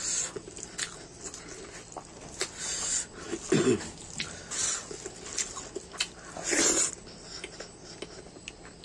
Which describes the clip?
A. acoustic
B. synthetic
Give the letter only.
A